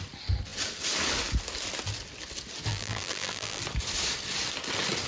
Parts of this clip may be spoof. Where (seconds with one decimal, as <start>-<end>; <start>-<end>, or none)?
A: 2.7-3.6

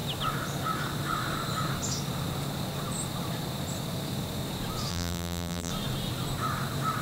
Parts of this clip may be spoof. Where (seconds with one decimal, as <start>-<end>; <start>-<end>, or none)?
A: 4.9-5.7

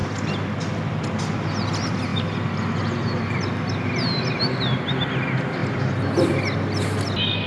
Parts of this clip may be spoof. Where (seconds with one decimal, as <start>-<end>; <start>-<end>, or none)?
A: 2.1-3.7; 5.6-7.5

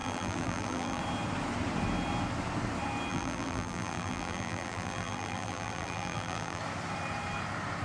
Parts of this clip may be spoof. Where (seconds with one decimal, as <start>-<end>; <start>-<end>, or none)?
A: 0.0-1.0; 3.1-6.6

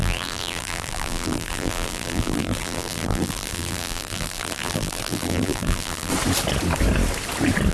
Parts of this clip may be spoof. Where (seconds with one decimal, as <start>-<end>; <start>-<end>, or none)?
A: 0.0-6.1